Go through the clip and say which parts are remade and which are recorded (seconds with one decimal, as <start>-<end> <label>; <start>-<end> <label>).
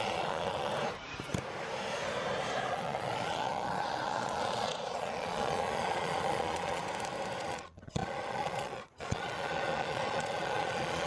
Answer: 0.0-0.7 remade; 0.7-2.7 recorded; 2.7-6.8 remade; 6.8-7.4 recorded; 7.4-11.1 remade